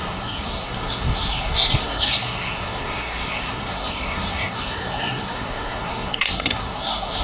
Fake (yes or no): yes